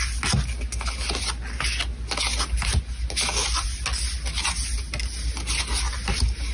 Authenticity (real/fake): real